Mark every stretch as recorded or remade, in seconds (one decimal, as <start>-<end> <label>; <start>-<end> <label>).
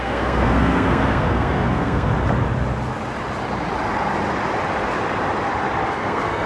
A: 0.0-2.1 remade; 2.1-5.9 recorded; 5.9-6.5 remade